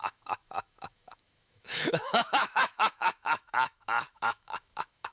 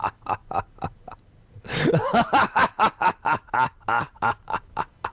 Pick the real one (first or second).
second